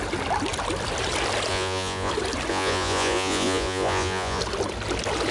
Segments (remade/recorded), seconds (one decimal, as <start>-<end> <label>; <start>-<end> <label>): 0.0-1.5 recorded; 1.5-2.1 remade; 2.1-2.5 recorded; 2.5-4.4 remade; 4.4-5.3 recorded